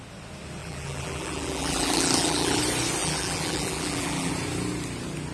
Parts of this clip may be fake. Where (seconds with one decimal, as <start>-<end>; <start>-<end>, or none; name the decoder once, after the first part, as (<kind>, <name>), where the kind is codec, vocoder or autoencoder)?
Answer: 0.6-2.6 (vocoder, BigVGAN v2); 3.0-4.3